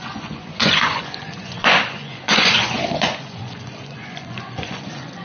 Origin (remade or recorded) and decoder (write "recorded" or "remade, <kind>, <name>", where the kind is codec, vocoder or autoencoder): remade, vocoder, Vocos